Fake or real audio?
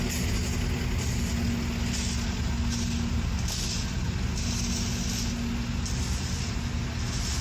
real